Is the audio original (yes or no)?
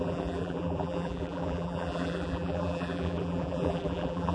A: no